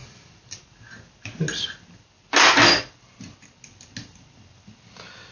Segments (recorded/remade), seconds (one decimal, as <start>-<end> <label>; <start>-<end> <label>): 0.0-5.3 recorded

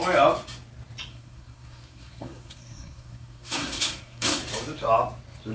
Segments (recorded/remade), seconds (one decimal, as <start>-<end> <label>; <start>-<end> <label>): 0.0-1.1 recorded; 1.1-4.4 remade; 4.4-5.5 recorded

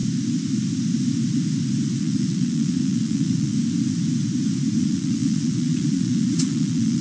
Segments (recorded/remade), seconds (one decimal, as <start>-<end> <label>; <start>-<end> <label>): 0.0-2.0 recorded; 2.0-3.5 remade; 3.5-4.8 recorded; 4.8-7.0 remade